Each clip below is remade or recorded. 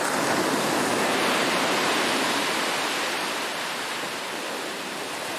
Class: recorded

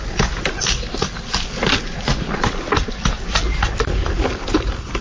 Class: remade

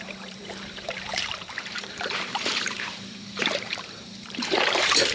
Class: remade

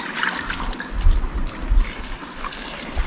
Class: recorded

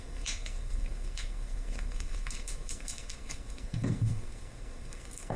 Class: remade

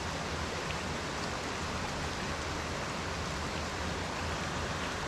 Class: recorded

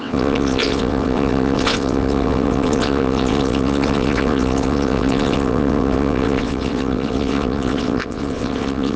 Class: remade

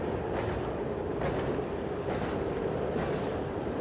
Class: recorded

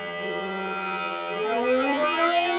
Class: remade